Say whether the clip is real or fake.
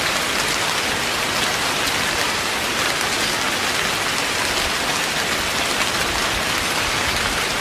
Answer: real